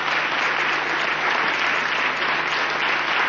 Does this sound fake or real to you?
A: real